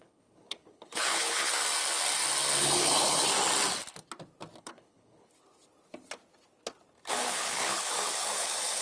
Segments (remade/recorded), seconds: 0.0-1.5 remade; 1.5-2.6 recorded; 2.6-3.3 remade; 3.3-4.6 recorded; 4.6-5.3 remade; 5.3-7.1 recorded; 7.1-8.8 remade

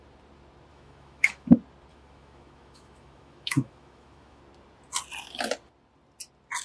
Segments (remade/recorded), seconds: 0.0-0.7 recorded; 0.7-1.5 remade; 1.5-1.9 recorded; 1.9-4.4 remade; 4.4-6.6 recorded

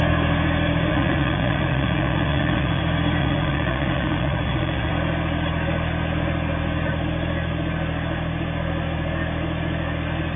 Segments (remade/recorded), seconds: 0.0-0.9 recorded; 0.9-2.8 remade; 2.8-3.2 recorded; 3.2-4.9 remade; 4.9-10.4 recorded

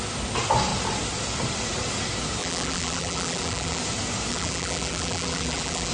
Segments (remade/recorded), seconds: 0.0-2.4 recorded; 2.4-3.8 remade; 3.8-4.3 recorded; 4.3-5.9 remade

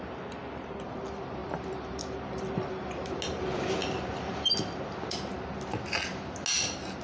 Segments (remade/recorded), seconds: 0.0-1.4 recorded; 1.4-2.7 remade; 2.7-3.8 recorded; 3.8-4.3 remade; 4.3-7.0 recorded